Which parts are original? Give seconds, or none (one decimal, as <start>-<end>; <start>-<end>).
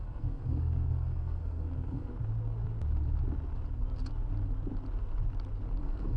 2.1-5.8